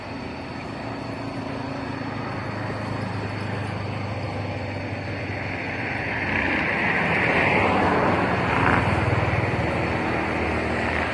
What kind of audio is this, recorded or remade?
recorded